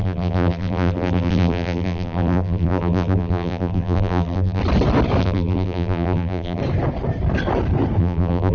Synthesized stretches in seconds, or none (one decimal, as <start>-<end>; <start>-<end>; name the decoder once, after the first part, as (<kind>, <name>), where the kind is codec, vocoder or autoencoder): 0.0-4.6 (vocoder, BigVGAN v2); 5.2-6.6; 8.0-8.5